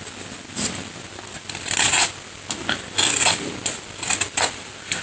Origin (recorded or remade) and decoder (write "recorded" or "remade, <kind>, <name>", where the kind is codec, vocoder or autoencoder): recorded